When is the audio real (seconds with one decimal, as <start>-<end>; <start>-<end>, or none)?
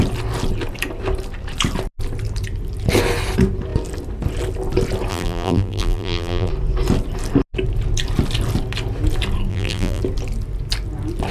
0.0-5.1; 6.5-9.5; 10.0-11.3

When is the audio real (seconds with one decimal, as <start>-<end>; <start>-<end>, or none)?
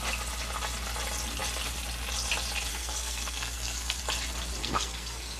0.0-2.7; 4.0-4.6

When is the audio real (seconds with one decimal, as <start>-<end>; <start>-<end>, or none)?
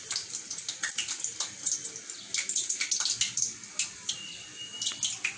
0.0-5.4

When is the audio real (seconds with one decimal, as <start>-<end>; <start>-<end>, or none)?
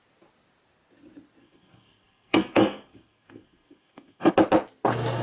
0.0-1.4; 4.3-5.2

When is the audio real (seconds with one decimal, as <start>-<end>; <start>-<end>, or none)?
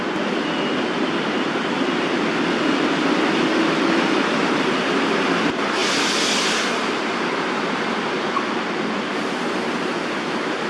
0.0-10.7